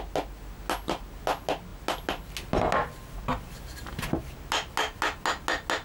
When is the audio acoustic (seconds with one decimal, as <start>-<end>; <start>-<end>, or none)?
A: 0.0-5.8